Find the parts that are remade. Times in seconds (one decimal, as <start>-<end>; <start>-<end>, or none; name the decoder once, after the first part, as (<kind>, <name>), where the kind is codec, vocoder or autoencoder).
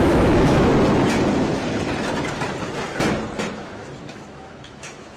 0.0-0.7 (autoencoder, DAC-VAE); 3.5-5.2